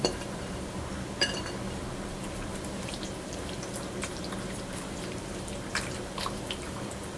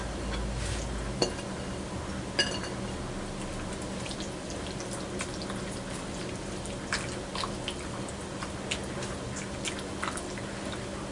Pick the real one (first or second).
second